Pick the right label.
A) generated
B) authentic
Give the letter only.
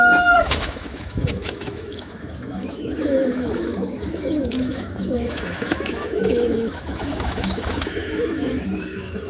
A